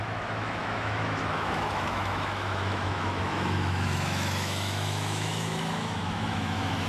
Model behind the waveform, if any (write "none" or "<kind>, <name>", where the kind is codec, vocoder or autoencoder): autoencoder, DAC-VAE